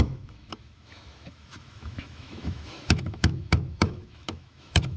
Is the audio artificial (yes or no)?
yes